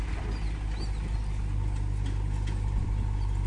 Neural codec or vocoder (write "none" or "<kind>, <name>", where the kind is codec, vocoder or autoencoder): none